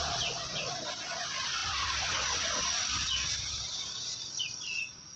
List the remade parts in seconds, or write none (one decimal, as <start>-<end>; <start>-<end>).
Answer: none